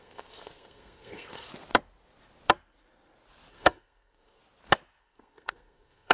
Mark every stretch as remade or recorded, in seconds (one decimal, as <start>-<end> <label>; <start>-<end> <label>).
0.0-1.5 remade; 1.5-3.5 recorded; 3.5-4.4 remade; 4.4-5.0 recorded; 5.0-6.1 remade